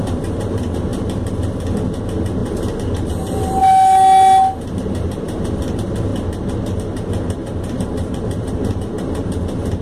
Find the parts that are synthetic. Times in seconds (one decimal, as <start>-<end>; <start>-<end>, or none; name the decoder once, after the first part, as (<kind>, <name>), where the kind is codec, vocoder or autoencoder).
0.0-0.9 (vocoder, BigVGAN v2); 2.0-3.6; 4.6-6.1; 6.7-9.8